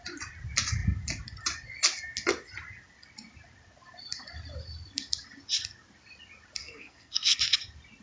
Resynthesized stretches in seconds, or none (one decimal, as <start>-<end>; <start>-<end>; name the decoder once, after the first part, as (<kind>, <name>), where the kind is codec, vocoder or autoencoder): 6.6-7.4 (codec, SNAC)

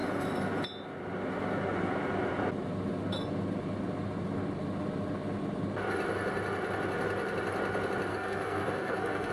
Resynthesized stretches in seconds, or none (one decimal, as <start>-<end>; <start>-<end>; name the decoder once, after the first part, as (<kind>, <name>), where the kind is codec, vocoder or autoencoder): 8.1-9.3 (codec, SNAC)

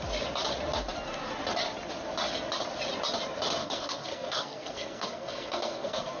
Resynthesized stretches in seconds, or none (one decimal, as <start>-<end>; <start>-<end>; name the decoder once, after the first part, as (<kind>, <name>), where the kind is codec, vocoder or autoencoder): 3.6-6.2 (codec, SNAC)

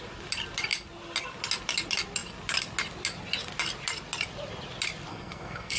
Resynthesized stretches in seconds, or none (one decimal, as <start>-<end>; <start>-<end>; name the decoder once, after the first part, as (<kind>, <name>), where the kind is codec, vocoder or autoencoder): 5.1-5.8 (codec, SNAC)

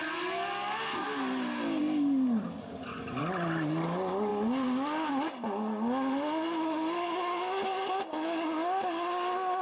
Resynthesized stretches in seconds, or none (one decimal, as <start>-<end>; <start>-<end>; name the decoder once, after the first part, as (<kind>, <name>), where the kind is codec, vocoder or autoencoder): none